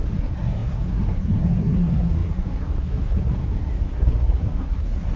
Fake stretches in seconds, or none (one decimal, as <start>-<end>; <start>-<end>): 0.0-5.2